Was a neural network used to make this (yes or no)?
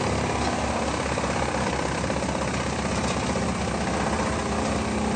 no